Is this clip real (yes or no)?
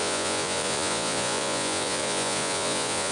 no